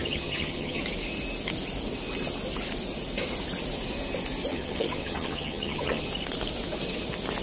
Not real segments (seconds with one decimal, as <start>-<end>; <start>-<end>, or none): 0.0-0.8; 4.5-6.1